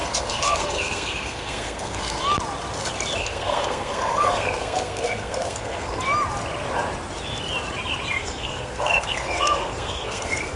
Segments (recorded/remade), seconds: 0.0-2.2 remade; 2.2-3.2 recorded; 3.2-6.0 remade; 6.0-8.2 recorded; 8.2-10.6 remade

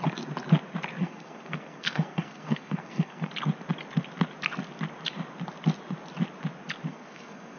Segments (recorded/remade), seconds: 0.0-1.0 recorded; 1.0-3.3 remade; 3.3-6.9 recorded; 6.9-7.6 remade